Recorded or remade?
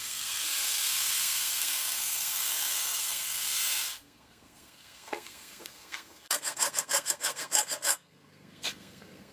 remade